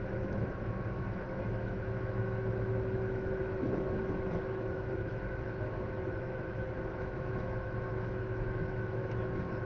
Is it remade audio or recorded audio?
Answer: remade